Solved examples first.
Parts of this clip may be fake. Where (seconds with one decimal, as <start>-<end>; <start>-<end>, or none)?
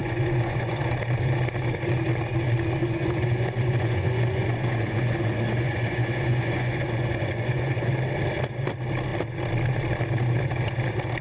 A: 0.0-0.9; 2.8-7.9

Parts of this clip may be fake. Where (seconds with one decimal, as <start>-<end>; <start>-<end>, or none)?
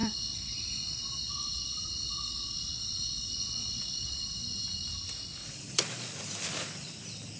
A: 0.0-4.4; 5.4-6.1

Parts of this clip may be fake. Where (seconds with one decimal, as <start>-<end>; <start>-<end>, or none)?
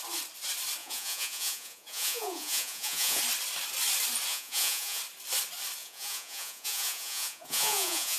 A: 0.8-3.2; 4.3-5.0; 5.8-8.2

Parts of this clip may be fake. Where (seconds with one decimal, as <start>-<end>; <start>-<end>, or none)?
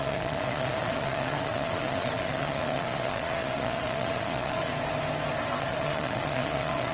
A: 0.0-4.7; 5.6-6.9